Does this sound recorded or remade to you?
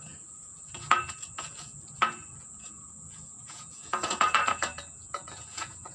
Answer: remade